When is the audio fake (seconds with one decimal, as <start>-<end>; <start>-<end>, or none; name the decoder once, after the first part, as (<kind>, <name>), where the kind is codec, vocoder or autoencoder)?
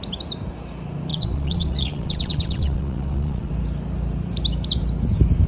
1.1-3.5 (vocoder, WaveNeXt)